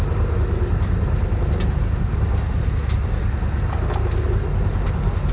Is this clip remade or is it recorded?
recorded